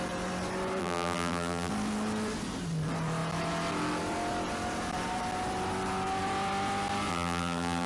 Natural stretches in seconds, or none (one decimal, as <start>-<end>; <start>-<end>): 0.0-0.8; 1.7-7.1